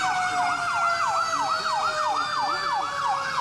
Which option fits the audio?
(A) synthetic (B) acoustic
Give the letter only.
B